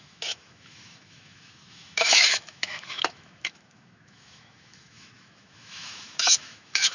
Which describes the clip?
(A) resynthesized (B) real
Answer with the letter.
A